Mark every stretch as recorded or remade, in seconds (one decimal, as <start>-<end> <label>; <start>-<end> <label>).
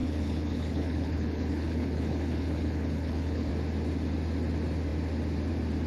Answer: 0.0-3.5 remade; 3.5-5.9 recorded